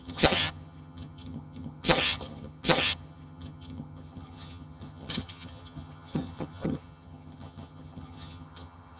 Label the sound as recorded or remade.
remade